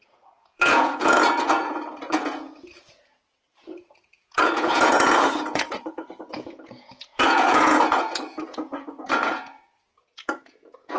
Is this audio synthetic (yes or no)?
yes